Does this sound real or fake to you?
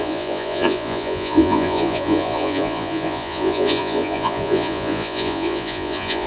fake